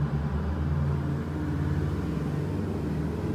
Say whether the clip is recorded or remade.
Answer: recorded